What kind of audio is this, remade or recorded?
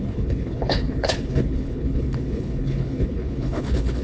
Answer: remade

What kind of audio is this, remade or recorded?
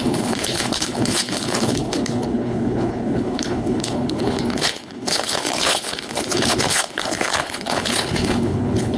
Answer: remade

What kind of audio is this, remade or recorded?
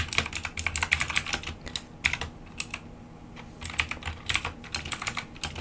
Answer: recorded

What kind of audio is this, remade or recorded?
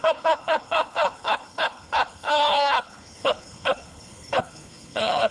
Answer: remade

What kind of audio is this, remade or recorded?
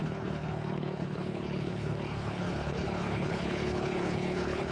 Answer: remade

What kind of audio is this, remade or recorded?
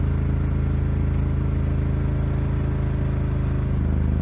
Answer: recorded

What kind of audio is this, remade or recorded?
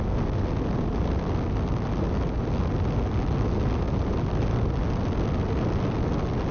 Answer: recorded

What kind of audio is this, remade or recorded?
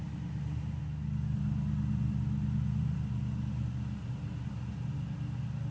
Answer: recorded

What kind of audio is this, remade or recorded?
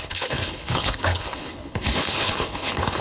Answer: remade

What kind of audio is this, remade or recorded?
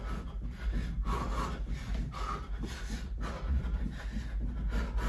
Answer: recorded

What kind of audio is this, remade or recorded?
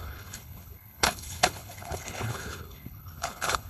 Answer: remade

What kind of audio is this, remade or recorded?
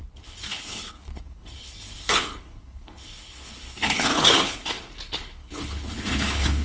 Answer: remade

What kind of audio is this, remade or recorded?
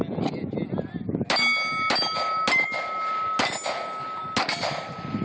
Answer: recorded